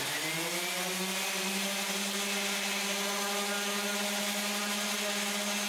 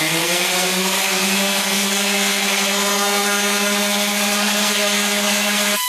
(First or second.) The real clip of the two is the first